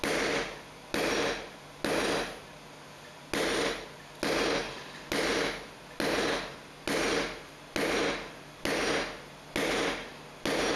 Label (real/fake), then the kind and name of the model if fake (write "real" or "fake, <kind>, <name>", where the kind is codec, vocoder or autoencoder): real